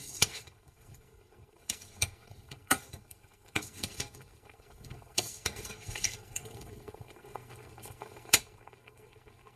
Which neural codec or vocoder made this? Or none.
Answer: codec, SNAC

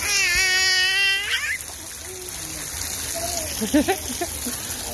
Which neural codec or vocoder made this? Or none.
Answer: none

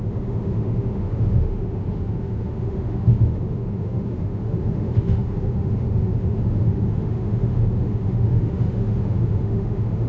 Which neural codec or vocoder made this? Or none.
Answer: autoencoder, DAC-VAE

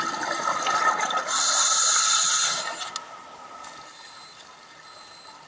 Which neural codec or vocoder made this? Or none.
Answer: none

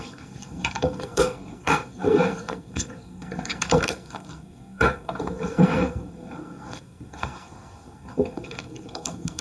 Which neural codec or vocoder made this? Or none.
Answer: codec, SNAC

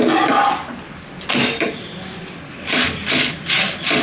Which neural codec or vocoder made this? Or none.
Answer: none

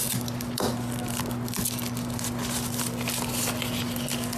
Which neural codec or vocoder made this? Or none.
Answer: none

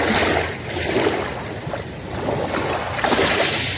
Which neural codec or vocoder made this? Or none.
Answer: none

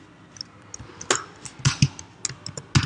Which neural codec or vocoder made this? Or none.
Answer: none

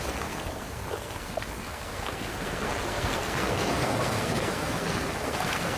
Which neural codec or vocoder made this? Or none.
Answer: codec, SNAC